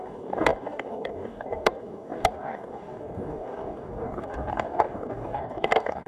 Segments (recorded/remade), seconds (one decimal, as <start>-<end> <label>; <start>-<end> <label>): 0.0-6.1 remade